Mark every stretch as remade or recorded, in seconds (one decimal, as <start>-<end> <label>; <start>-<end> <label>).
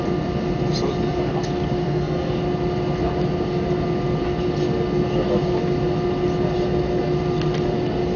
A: 0.0-1.8 recorded; 1.8-2.3 remade; 2.3-8.2 recorded